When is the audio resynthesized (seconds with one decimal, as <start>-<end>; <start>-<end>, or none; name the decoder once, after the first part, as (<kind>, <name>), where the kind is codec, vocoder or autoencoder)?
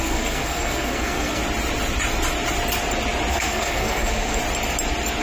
0.0-1.4 (codec, SNAC); 3.3-4.4